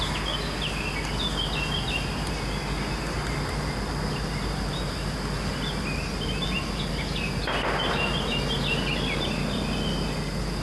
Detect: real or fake real